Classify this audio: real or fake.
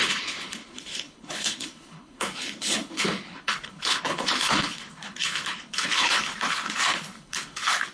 fake